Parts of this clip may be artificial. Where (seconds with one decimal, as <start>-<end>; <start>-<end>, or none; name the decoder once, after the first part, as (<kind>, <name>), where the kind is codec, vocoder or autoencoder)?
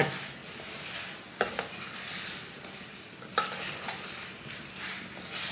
none